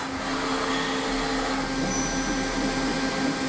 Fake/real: real